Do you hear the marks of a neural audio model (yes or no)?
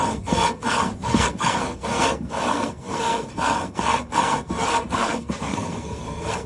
yes